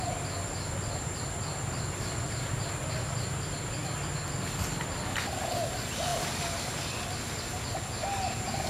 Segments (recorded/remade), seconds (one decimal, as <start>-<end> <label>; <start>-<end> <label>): 0.0-8.7 recorded